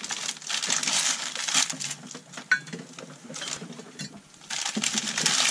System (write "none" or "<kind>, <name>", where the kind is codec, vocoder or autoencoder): none